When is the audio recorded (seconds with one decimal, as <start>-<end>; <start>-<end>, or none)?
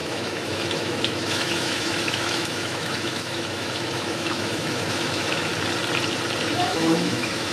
5.5-6.4